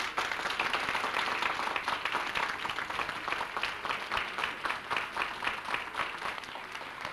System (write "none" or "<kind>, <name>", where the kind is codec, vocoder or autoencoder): none